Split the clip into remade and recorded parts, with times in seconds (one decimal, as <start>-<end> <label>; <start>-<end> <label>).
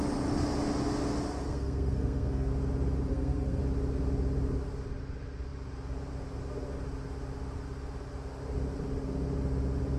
0.0-1.5 recorded; 1.5-2.5 remade; 2.5-3.1 recorded; 3.1-3.6 remade; 3.6-10.0 recorded